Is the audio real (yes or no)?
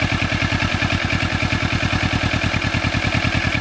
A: yes